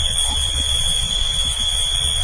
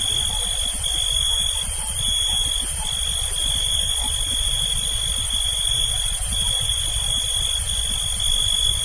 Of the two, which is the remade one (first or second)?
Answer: first